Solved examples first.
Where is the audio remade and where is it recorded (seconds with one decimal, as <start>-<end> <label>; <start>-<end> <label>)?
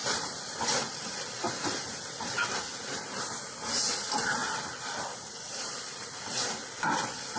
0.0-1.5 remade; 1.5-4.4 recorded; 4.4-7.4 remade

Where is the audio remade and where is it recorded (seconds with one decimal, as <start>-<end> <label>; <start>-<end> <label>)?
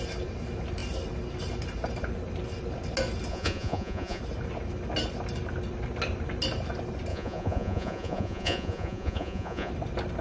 0.0-3.3 recorded; 3.3-4.2 remade; 4.2-7.1 recorded; 7.1-9.7 remade; 9.7-10.2 recorded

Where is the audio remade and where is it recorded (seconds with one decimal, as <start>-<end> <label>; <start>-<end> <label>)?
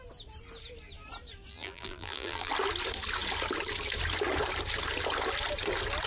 0.0-1.5 recorded; 1.5-2.5 remade; 2.5-6.1 recorded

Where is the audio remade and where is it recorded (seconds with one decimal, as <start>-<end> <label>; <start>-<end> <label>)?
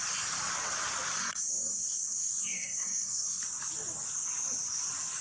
0.0-1.2 recorded; 1.2-3.4 remade; 3.4-5.2 recorded